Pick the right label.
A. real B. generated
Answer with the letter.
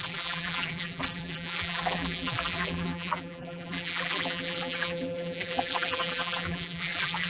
B